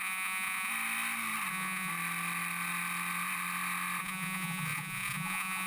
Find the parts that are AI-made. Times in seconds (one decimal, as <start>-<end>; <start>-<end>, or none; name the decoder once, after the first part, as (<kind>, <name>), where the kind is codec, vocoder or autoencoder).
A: 0.0-0.7 (vocoder, Vocos); 1.5-1.9; 4.0-5.7